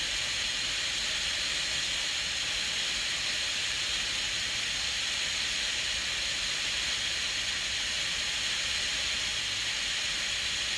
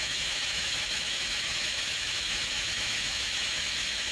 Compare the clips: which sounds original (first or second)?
first